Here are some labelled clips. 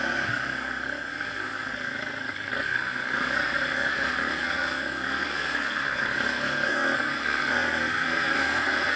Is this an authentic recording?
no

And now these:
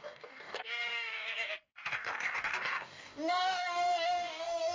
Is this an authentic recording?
no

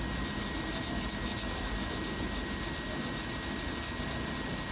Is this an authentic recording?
yes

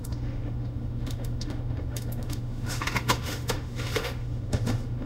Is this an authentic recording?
no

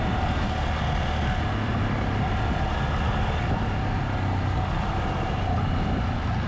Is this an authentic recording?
yes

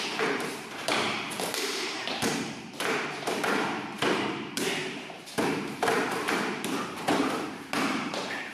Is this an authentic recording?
no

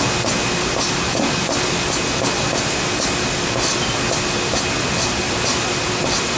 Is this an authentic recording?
yes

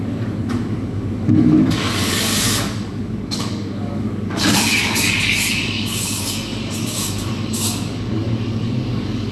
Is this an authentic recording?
no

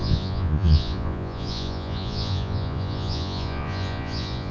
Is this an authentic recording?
no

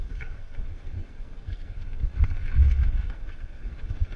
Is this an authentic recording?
no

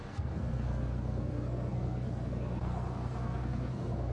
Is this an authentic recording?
no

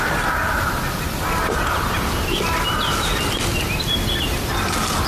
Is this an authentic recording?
yes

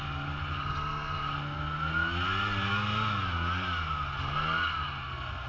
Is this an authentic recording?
yes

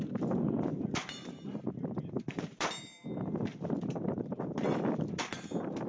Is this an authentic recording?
no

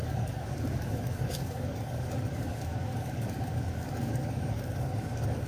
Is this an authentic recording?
no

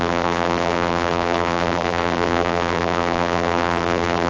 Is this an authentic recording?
no